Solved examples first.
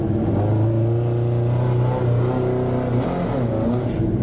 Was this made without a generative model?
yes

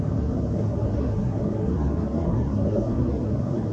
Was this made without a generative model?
no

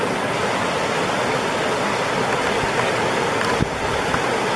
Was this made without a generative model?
yes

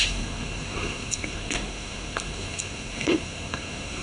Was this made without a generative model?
no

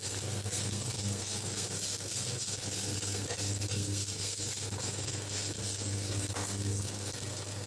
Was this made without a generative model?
no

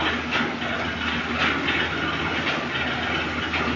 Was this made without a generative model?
yes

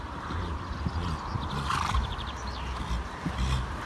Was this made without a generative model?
yes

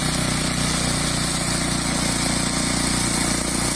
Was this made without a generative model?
yes